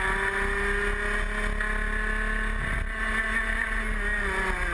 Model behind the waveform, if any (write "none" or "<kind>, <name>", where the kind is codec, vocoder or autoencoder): none